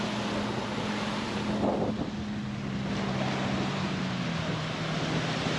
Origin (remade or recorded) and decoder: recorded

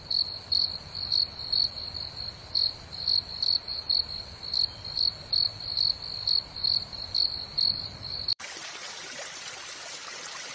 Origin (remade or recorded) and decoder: remade, vocoder, BigVGAN v2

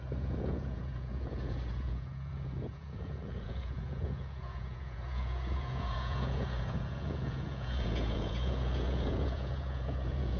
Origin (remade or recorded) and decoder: remade, vocoder, Vocos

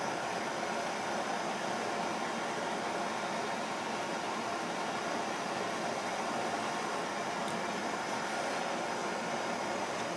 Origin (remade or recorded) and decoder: recorded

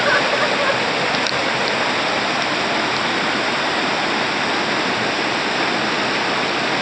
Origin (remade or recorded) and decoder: recorded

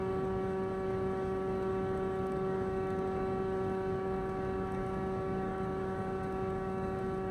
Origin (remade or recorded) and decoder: remade, codec, DAC